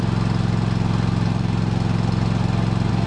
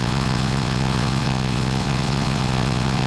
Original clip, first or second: first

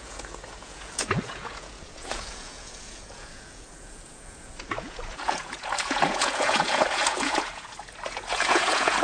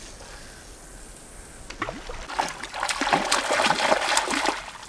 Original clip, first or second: second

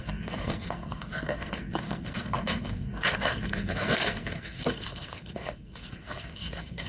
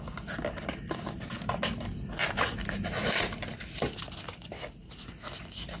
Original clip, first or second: second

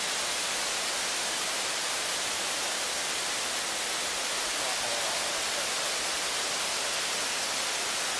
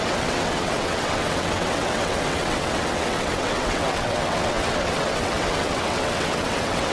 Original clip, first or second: first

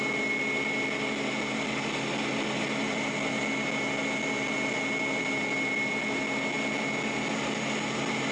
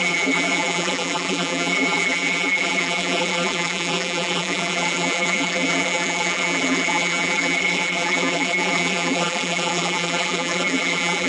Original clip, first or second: first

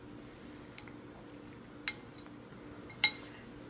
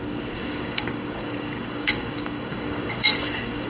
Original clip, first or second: first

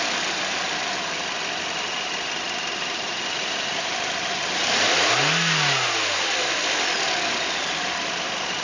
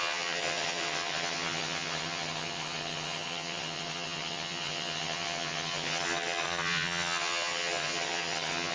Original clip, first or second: first